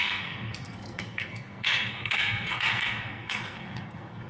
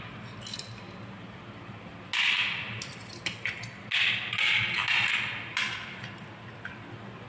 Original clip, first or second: second